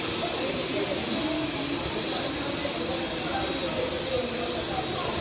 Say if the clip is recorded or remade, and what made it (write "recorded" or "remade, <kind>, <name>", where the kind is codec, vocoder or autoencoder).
recorded